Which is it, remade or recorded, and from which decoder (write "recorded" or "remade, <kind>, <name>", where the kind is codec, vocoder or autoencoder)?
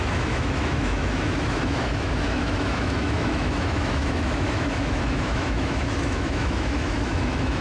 remade, autoencoder, DAC-VAE